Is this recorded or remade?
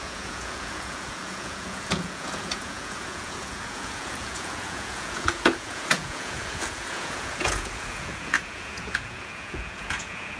remade